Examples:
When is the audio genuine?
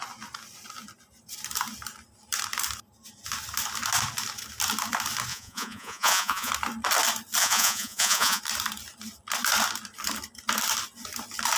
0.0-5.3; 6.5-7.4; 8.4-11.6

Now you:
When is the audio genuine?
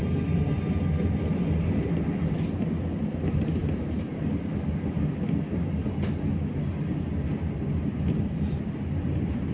0.0-9.5